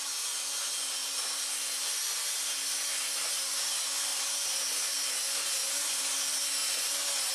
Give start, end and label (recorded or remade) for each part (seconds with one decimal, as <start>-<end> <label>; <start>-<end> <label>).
0.0-7.3 recorded